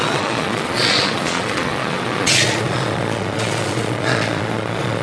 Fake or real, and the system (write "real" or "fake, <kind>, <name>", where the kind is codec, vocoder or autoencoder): fake, vocoder, Vocos